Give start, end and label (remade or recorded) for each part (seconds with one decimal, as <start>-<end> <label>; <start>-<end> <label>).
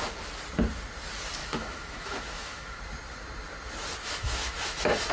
0.0-1.4 recorded; 1.4-2.8 remade; 2.8-4.0 recorded; 4.0-5.1 remade